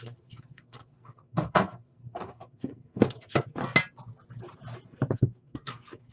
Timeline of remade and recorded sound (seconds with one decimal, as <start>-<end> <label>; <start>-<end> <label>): 0.0-3.6 remade; 3.6-5.1 recorded; 5.1-6.1 remade